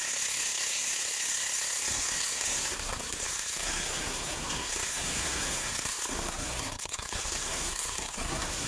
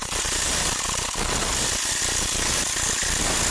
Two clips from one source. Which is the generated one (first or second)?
first